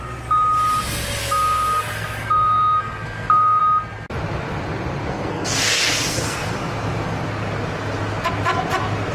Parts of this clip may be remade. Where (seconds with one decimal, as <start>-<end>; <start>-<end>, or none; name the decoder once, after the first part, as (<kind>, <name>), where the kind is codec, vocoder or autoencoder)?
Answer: 1.2-3.6 (codec, SNAC); 5.0-6.5